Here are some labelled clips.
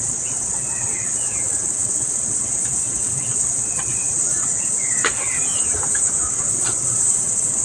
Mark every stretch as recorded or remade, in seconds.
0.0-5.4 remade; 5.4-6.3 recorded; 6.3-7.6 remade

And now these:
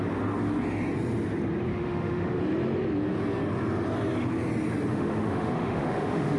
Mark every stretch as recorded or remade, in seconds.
0.0-1.7 recorded; 1.7-2.4 remade; 2.4-4.9 recorded; 4.9-6.4 remade

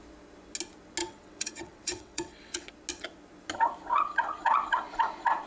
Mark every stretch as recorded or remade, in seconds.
0.0-1.0 recorded; 1.0-2.7 remade; 2.7-5.5 recorded

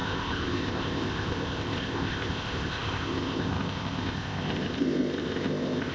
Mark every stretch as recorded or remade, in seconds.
0.0-5.9 remade

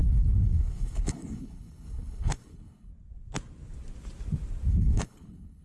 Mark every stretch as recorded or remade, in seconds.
0.0-2.9 remade; 2.9-4.7 recorded; 4.7-5.6 remade

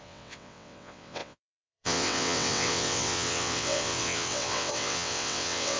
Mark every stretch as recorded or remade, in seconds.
0.0-5.8 remade

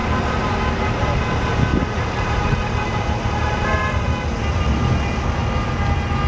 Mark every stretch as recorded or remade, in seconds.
0.0-0.5 remade; 0.5-1.7 recorded; 1.7-4.0 remade; 4.0-6.3 recorded